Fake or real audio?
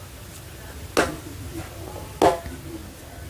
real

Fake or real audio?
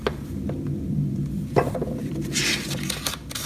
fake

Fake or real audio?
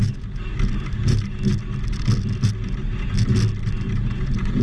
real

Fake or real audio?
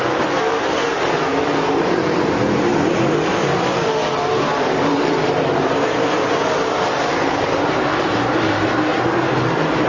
fake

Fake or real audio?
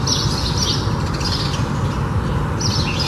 real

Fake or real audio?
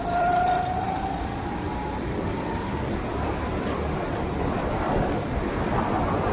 fake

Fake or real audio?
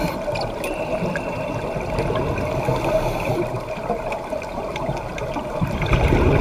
real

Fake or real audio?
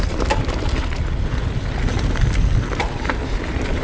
real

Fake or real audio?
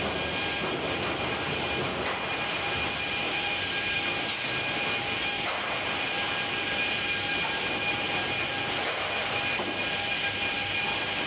fake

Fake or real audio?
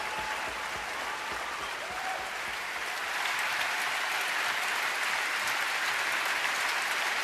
real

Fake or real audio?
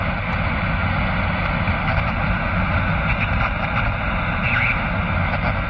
real